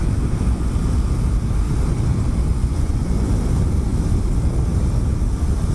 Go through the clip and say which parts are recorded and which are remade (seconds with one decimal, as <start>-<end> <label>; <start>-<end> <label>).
0.0-2.6 recorded; 2.6-3.3 remade; 3.3-5.7 recorded

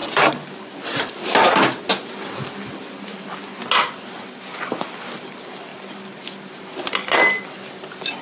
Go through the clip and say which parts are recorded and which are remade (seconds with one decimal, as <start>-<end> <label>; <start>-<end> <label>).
0.0-8.2 recorded

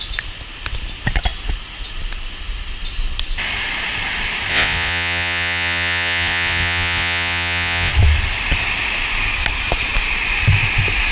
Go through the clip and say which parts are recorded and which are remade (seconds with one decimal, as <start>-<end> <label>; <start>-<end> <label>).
0.0-4.5 recorded; 4.5-7.9 remade; 7.9-11.1 recorded

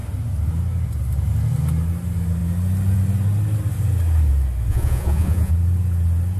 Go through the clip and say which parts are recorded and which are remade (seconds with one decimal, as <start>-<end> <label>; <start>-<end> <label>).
0.0-4.7 recorded; 4.7-5.5 remade; 5.5-6.4 recorded

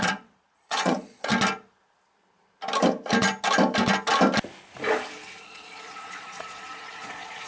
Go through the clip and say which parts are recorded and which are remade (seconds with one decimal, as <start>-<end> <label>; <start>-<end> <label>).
0.0-1.3 remade; 1.3-5.4 recorded; 5.4-7.5 remade

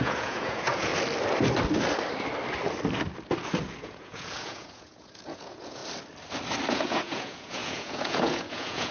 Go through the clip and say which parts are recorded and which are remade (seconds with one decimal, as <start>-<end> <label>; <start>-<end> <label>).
0.0-0.9 remade; 0.9-3.8 recorded; 3.8-5.8 remade; 5.8-6.7 recorded; 6.7-8.9 remade

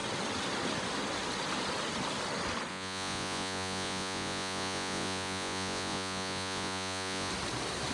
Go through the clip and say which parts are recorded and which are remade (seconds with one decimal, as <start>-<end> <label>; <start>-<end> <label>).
0.0-2.7 recorded; 2.7-7.3 remade; 7.3-7.9 recorded

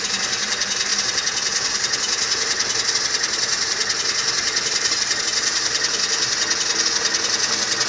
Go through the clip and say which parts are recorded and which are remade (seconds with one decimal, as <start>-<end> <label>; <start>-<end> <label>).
0.0-7.9 recorded